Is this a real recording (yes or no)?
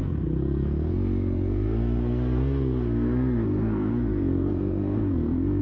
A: no